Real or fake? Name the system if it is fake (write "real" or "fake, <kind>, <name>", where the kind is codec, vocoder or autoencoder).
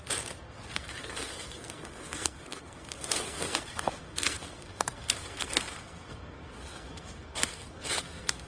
fake, codec, SNAC